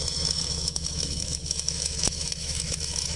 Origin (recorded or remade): remade